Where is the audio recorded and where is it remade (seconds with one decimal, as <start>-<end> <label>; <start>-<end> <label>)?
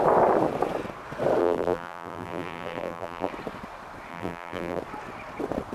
0.0-1.4 recorded; 1.4-3.3 remade; 3.3-4.1 recorded; 4.1-4.8 remade; 4.8-5.7 recorded